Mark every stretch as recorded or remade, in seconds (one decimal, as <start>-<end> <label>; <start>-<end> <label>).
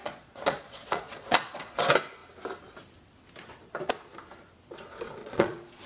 0.0-1.8 remade; 1.8-5.2 recorded; 5.2-5.9 remade